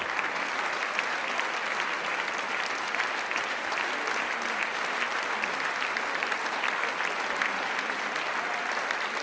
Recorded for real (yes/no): yes